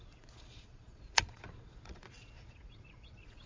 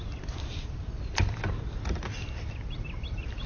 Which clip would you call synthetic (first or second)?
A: first